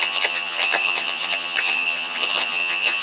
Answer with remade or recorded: remade